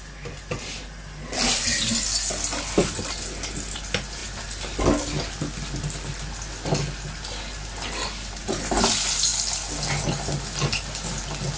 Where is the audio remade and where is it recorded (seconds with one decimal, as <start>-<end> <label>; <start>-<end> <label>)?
0.0-11.6 recorded